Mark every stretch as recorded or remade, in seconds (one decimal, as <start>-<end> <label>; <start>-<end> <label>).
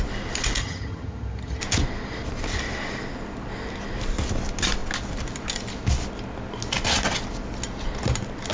0.0-0.6 recorded; 0.6-1.6 remade; 1.6-8.5 recorded